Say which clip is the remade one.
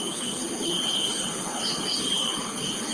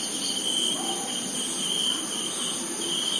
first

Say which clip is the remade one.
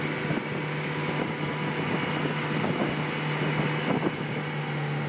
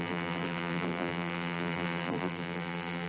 second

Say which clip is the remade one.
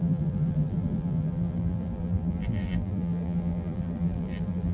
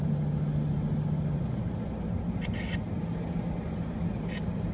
first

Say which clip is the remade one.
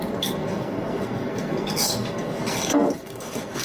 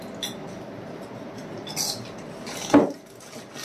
first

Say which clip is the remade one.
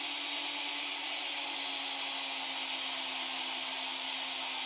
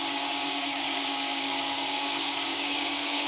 second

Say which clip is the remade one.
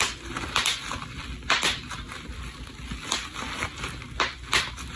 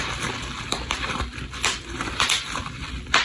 second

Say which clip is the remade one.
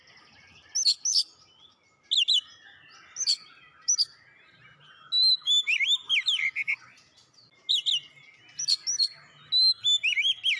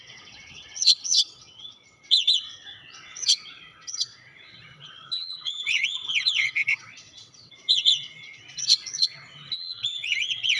second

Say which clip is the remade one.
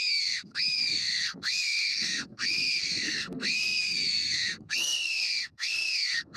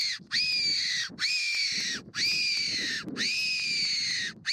first